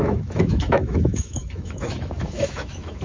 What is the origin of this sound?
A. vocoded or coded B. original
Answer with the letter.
A